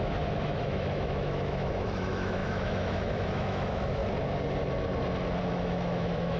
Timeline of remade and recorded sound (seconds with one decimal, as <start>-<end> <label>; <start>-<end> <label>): 0.0-4.0 remade; 4.0-5.5 recorded; 5.5-6.4 remade